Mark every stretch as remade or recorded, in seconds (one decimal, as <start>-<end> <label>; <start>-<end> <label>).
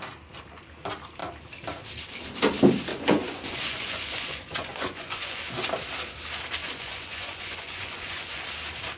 0.0-2.9 recorded; 2.9-5.4 remade; 5.4-6.6 recorded; 6.6-8.4 remade; 8.4-9.0 recorded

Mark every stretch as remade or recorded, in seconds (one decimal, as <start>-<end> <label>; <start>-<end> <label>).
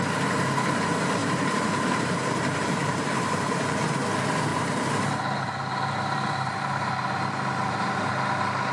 0.0-1.2 recorded; 1.2-3.8 remade; 3.8-4.5 recorded; 4.5-8.1 remade; 8.1-8.7 recorded